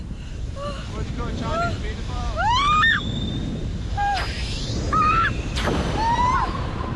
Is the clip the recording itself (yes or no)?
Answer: no